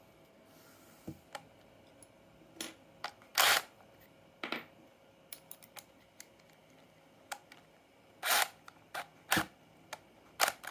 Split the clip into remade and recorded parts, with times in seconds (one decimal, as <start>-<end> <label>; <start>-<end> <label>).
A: 0.0-10.7 recorded